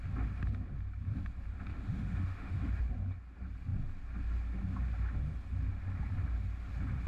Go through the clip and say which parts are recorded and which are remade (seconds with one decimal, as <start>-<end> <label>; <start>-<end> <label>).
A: 0.0-1.7 recorded; 1.7-2.8 remade; 2.8-7.1 recorded